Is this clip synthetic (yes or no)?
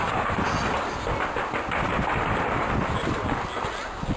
no